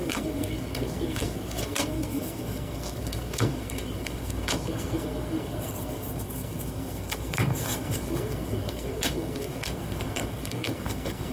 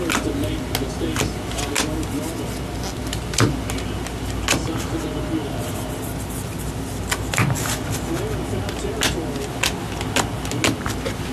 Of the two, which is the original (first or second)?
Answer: second